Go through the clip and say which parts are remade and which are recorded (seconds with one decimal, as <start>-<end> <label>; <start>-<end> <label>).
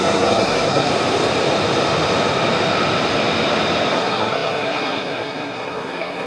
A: 0.0-0.9 remade; 0.9-3.9 recorded; 3.9-6.3 remade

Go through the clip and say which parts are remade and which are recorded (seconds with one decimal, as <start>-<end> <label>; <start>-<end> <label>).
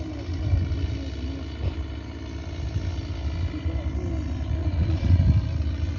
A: 0.0-4.6 recorded; 4.6-5.2 remade; 5.2-6.0 recorded